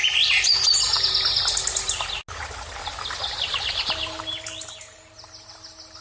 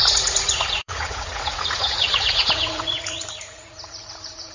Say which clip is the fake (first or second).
second